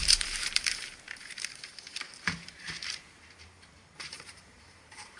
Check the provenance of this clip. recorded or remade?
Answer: remade